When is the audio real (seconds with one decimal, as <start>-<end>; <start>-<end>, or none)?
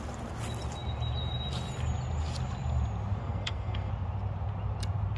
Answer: 0.0-3.2; 3.9-5.2